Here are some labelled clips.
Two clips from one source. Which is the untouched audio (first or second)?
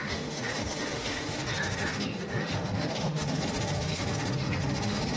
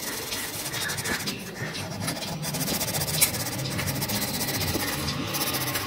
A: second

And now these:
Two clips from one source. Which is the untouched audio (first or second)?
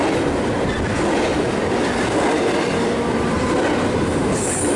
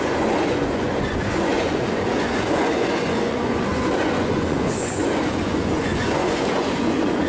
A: first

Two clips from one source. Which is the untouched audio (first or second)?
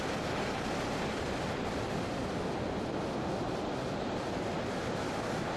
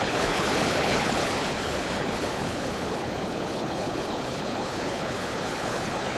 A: first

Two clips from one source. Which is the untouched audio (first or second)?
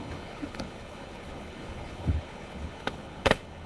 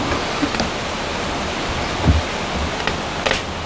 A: second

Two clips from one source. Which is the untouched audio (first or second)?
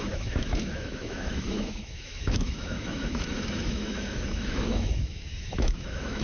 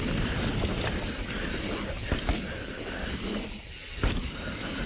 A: second